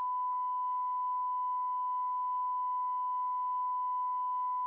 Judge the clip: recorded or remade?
remade